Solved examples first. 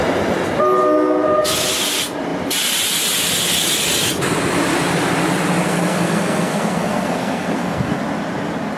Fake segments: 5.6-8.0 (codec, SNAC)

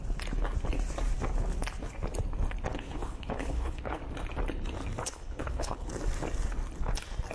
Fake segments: 2.7-4.0 (codec, HILCodec); 5.0-5.9

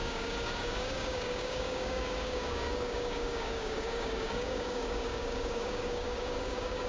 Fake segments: 0.0-6.9 (codec, DAC)

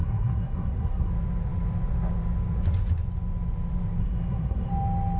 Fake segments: 0.0-1.1 (codec, SNAC); 4.0-4.7

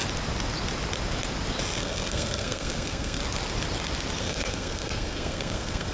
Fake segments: 1.8-3.2 (codec, SNAC); 4.2-5.9

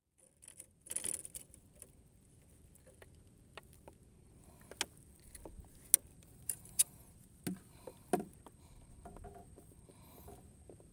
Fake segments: 6.1-6.9 (vocoder, BigVGAN v2)

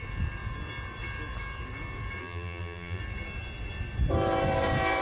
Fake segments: 2.2-3.0 (vocoder, BigVGAN v2)

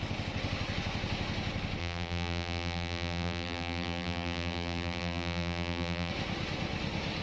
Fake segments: 1.8-6.1 (vocoder, BigVGAN v2)